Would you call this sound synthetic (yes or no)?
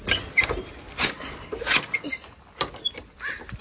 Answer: no